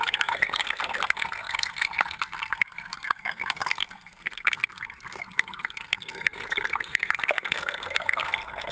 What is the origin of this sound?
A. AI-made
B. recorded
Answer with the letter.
A